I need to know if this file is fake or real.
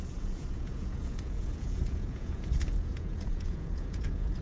fake